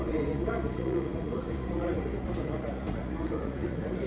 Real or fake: fake